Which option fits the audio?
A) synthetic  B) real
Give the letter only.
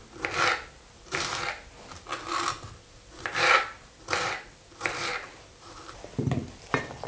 B